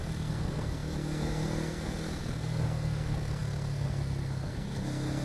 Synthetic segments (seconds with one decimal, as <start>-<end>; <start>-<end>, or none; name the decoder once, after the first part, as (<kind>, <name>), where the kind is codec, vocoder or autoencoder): 0.0-5.2 (codec, SNAC)